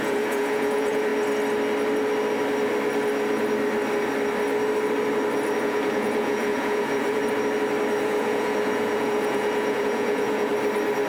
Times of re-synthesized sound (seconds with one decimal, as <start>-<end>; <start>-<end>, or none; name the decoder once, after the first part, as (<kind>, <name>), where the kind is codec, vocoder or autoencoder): 0.0-1.1 (vocoder, Vocos); 5.6-7.2; 8.0-10.5